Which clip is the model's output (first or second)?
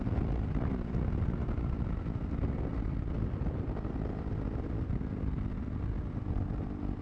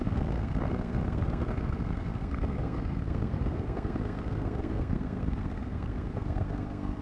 second